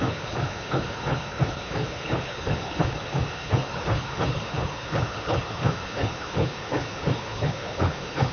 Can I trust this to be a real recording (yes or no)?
no